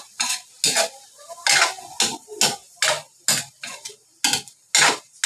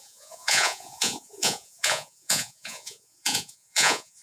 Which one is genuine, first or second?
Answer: first